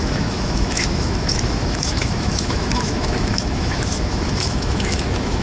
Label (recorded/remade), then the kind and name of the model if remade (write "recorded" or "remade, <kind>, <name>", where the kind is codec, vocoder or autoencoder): remade, autoencoder, DAC-VAE